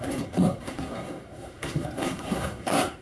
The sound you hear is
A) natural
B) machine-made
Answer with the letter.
B